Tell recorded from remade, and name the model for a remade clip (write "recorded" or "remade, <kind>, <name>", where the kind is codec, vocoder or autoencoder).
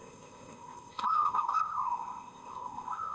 remade, codec, ZipCodec